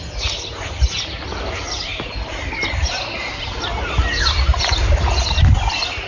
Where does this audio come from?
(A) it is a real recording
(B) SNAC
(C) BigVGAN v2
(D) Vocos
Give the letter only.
A